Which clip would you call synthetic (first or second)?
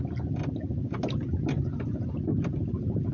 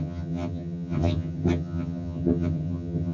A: second